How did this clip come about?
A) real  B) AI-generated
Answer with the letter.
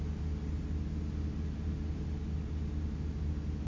A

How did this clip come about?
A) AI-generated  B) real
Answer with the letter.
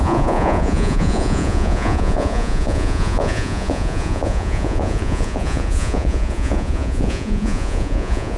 A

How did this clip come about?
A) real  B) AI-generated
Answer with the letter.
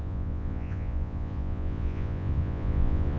B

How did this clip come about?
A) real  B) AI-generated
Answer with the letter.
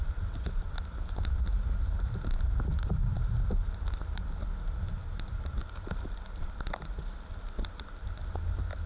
A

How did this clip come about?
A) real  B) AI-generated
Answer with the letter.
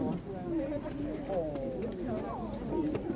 A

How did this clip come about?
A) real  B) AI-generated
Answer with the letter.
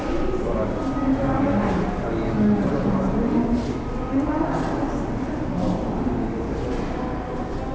A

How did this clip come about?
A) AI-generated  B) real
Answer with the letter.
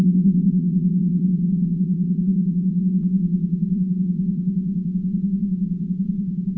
A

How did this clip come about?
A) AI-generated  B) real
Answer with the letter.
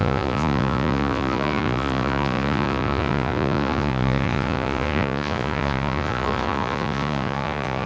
A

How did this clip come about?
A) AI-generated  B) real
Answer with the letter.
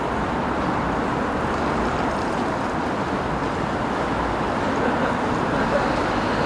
B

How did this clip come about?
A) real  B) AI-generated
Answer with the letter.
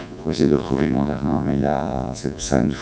B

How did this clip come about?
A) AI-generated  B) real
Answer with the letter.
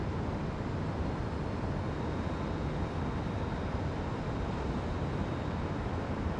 B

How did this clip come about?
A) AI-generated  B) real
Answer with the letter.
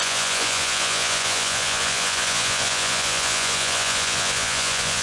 A